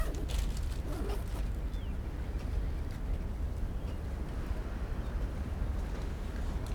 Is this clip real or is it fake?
real